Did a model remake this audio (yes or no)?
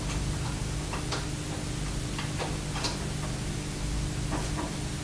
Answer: no